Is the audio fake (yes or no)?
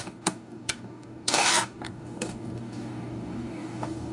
yes